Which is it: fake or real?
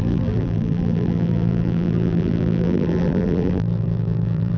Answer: fake